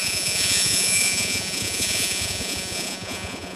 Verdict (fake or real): fake